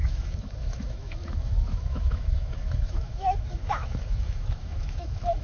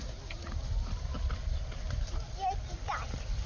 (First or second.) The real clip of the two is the second